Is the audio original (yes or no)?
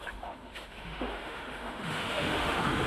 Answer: no